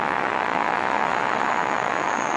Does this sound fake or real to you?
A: fake